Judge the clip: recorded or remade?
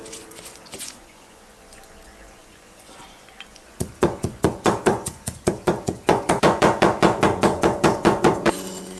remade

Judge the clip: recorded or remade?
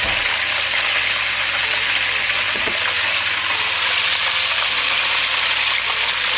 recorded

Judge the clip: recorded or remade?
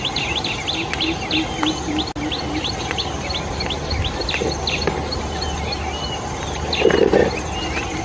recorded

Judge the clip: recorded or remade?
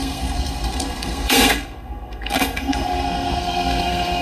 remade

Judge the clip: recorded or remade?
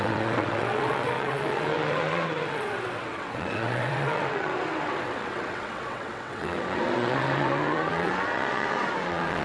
remade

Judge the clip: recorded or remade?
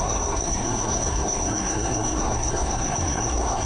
remade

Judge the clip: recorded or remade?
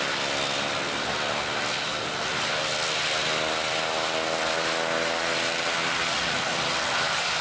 recorded